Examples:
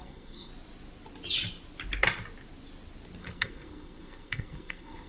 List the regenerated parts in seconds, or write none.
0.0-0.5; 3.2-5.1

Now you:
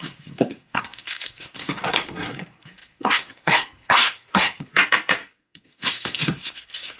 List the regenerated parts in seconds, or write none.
0.0-7.0

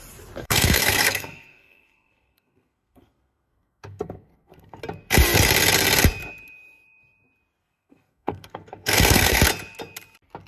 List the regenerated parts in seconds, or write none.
0.4-4.8; 7.6-9.4

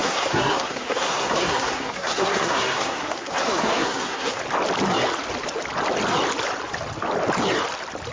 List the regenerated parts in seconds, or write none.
0.0-4.4

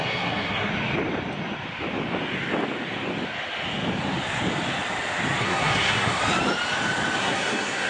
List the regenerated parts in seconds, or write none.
0.0-0.7; 5.4-6.2; 7.2-7.9